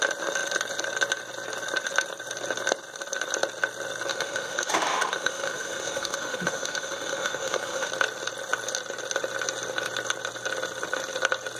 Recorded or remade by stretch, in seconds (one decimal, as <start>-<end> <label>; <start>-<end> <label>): 0.0-4.1 recorded; 4.1-7.9 remade; 7.9-11.6 recorded